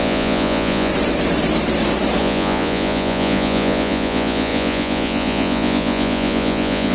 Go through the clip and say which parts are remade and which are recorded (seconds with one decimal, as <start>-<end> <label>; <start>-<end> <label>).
0.0-0.9 remade; 0.9-2.2 recorded; 2.2-6.9 remade